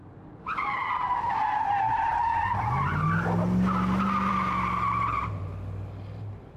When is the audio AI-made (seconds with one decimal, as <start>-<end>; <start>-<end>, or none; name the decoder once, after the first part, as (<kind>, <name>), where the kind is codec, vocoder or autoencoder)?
none